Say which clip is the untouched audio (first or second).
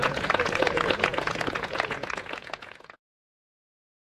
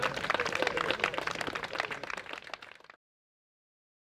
second